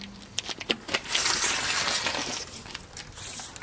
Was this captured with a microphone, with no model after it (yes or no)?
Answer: yes